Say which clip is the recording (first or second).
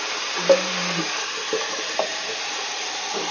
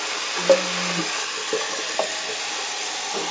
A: second